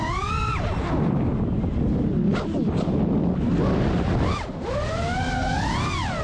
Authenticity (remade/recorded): recorded